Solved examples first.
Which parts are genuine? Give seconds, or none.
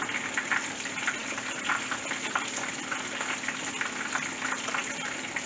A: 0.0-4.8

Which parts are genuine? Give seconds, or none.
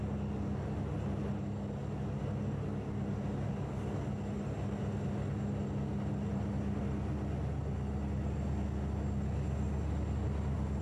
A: 0.0-10.8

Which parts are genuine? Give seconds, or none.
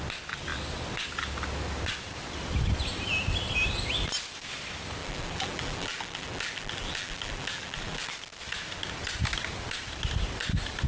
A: 0.0-5.0; 8.1-10.9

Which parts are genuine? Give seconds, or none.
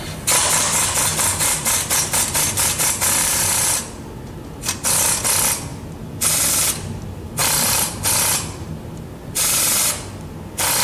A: 0.0-1.3; 3.8-7.4; 9.9-10.8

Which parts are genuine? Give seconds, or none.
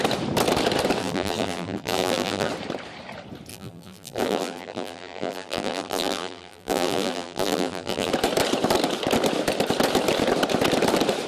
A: 0.0-1.0; 2.5-3.5; 8.1-11.3